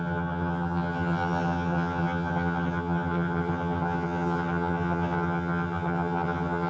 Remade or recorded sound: remade